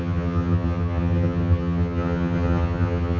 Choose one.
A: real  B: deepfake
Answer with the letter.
B